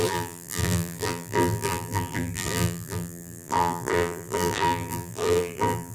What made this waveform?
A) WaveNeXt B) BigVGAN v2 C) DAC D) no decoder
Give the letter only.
B